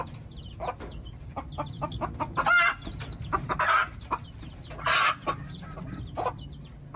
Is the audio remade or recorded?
recorded